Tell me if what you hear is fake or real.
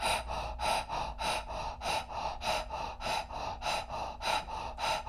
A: real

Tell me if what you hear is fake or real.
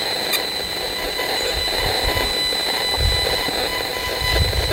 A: real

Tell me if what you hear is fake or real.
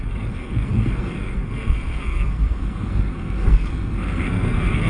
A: fake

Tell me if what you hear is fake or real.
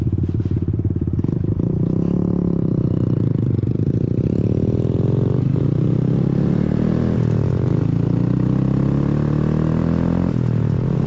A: real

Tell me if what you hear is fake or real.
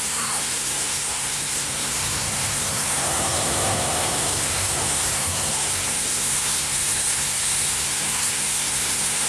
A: fake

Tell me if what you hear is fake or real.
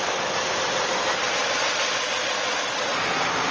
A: real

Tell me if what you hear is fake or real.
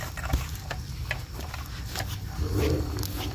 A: real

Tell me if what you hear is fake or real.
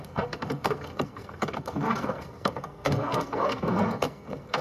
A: fake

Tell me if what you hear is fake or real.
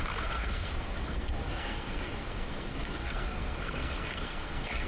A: fake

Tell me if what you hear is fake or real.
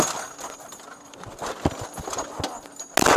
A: real